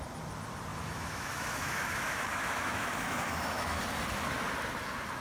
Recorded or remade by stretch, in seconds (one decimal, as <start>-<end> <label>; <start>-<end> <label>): 0.0-0.7 recorded; 0.7-3.8 remade; 3.8-5.2 recorded